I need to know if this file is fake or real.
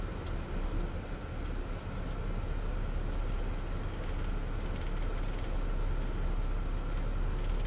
real